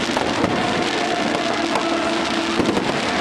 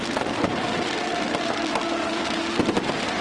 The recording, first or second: first